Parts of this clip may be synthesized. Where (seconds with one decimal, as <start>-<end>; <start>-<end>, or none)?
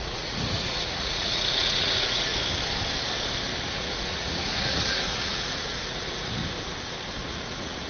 0.0-2.3; 3.7-6.4; 7.2-7.9